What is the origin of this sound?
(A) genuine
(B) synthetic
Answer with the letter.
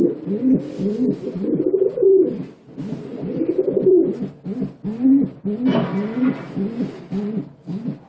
A